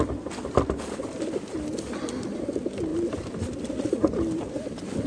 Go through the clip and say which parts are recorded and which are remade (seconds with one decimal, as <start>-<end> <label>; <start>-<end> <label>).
0.0-2.9 recorded; 2.9-4.4 remade; 4.4-5.1 recorded

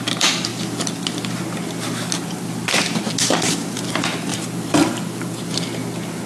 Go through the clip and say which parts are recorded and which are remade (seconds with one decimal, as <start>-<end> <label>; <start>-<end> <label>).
0.0-4.3 recorded; 4.3-5.5 remade; 5.5-6.3 recorded